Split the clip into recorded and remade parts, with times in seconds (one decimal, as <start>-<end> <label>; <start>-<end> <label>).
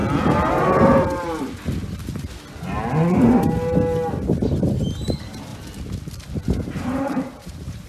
0.0-3.2 recorded; 3.2-5.5 remade; 5.5-6.6 recorded; 6.6-7.9 remade